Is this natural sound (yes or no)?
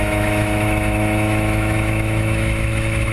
no